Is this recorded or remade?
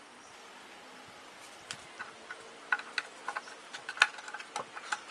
recorded